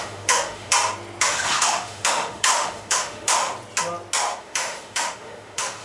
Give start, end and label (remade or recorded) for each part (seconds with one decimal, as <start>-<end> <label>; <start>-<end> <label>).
0.0-0.7 remade; 0.7-1.2 recorded; 1.2-3.5 remade; 3.5-4.4 recorded; 4.4-5.8 remade